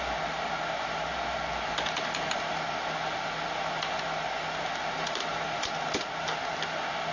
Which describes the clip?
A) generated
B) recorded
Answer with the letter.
B